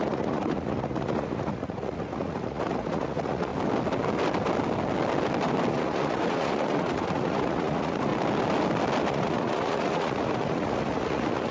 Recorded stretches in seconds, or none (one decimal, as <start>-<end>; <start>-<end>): 3.5-5.7; 8.1-9.1